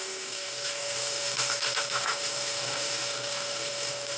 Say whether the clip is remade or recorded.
remade